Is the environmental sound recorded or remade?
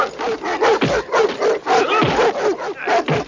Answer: recorded